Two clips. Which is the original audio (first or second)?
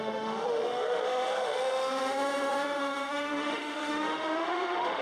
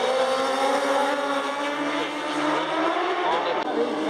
second